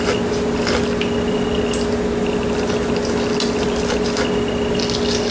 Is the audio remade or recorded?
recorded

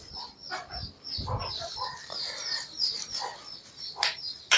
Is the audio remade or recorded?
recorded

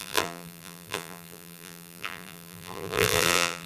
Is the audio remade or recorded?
remade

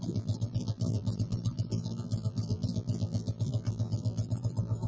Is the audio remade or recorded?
remade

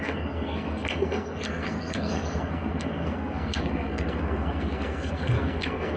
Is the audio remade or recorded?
remade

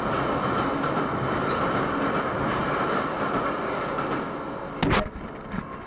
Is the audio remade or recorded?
recorded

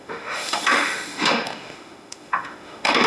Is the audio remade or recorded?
remade